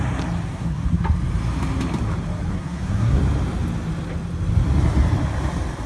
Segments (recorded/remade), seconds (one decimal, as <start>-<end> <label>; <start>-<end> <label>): 0.0-0.5 recorded; 0.5-1.0 remade; 1.0-2.5 recorded; 2.5-3.2 remade; 3.2-5.9 recorded